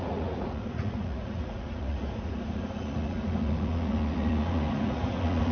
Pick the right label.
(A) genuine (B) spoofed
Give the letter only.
B